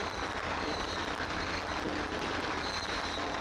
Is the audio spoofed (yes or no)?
yes